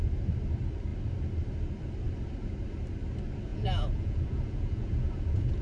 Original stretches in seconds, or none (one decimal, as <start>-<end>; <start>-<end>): 0.0-3.5

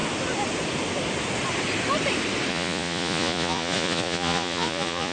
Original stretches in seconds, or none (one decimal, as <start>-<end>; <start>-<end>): 0.0-2.5

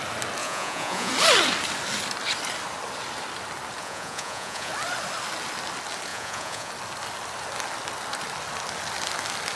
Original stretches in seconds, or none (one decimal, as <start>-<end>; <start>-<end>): 0.0-0.4; 1.1-3.8; 4.7-6.1; 6.7-9.6

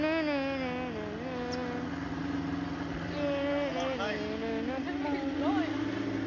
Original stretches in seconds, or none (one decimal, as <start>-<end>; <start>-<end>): 0.0-6.3

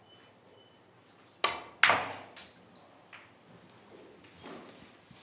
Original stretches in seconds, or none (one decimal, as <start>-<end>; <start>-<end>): 0.0-5.2

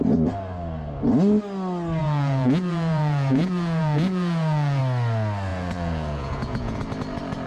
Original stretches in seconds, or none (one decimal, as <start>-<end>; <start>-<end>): 0.0-2.0; 4.8-5.5; 6.8-7.5

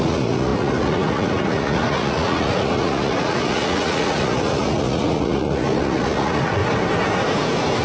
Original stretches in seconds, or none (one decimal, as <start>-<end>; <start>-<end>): 6.6-7.8

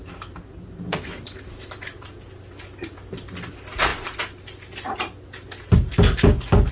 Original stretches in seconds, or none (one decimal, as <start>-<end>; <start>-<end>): 0.0-6.7